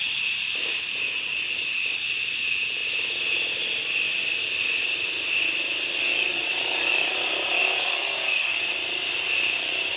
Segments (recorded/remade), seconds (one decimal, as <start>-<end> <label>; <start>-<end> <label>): 0.0-6.1 recorded; 6.1-7.1 remade; 7.1-7.6 recorded; 7.6-8.6 remade; 8.6-10.0 recorded